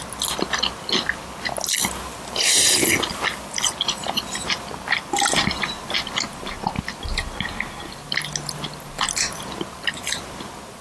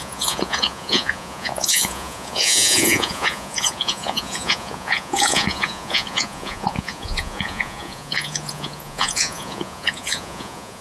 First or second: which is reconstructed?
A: second